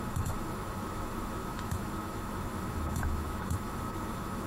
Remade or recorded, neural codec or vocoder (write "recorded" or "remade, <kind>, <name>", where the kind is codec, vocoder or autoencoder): remade, autoencoder, DAC-VAE